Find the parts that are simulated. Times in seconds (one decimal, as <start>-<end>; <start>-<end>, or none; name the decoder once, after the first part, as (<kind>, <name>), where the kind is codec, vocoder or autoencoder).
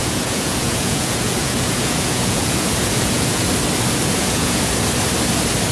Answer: 0.0-3.4 (vocoder, Vocos); 4.2-4.7